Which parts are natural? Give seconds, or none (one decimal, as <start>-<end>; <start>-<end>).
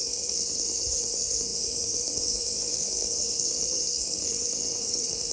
none